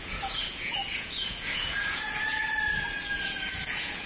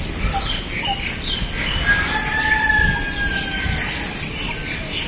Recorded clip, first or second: second